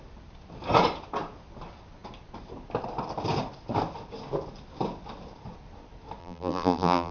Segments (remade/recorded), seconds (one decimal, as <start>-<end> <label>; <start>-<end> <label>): 0.0-6.2 recorded; 6.2-7.1 remade